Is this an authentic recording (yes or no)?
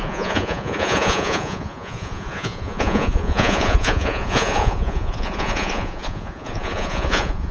no